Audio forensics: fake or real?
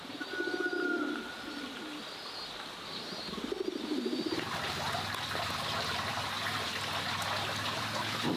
real